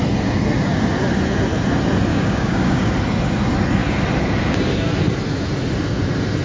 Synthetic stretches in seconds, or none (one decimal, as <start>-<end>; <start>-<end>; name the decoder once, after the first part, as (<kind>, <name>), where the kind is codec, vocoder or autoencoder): 2.1-2.9 (codec, DAC)